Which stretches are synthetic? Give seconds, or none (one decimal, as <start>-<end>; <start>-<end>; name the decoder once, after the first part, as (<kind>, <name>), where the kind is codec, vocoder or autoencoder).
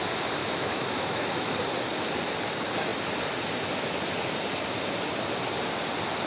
0.4-1.5 (autoencoder, DAC-VAE)